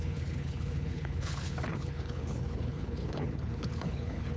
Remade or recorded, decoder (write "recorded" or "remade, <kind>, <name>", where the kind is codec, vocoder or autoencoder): remade, codec, HILCodec